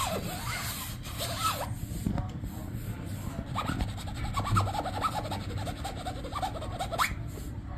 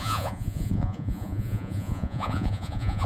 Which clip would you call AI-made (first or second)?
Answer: second